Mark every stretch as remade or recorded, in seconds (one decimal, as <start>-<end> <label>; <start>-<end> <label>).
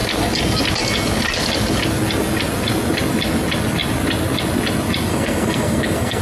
0.0-5.1 recorded; 5.1-6.2 remade